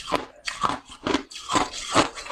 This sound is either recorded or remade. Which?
remade